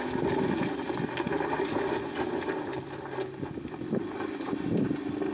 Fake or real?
real